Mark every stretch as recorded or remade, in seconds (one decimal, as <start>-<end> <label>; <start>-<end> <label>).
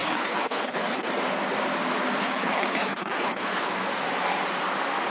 0.0-1.1 remade; 1.1-2.2 recorded; 2.2-3.7 remade; 3.7-5.1 recorded